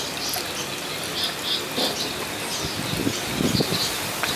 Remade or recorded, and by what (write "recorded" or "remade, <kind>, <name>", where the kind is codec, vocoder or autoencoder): recorded